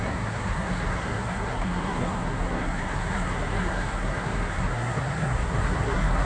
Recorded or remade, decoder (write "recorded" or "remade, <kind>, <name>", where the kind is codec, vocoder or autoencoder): remade, codec, SNAC